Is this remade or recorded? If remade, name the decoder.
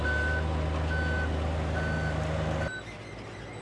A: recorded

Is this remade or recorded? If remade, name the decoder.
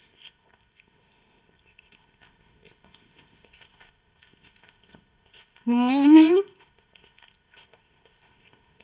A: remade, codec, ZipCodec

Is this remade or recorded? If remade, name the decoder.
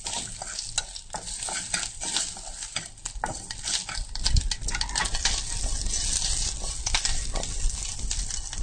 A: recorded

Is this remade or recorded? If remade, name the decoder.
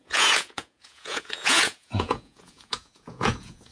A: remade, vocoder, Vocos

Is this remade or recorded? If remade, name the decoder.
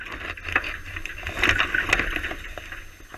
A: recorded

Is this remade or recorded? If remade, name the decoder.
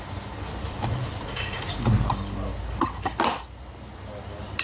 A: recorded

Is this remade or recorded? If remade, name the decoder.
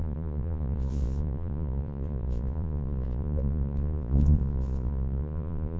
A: remade, vocoder, Vocos